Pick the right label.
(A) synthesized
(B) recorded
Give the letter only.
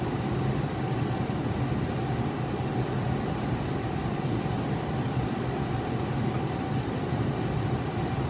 A